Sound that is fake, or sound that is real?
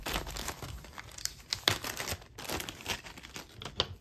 real